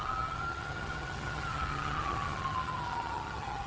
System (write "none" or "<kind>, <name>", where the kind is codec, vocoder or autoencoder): vocoder, HiFi-GAN